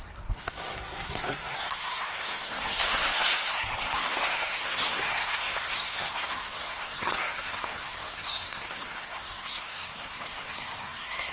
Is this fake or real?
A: fake